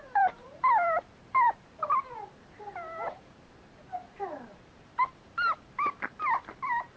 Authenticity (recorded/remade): remade